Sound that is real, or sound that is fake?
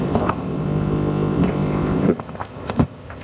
fake